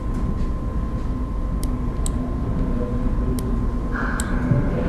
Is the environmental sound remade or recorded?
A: recorded